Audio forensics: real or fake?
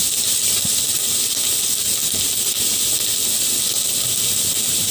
real